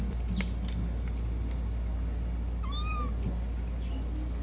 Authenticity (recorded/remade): recorded